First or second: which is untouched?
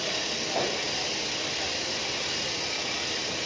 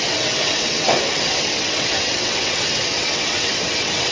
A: first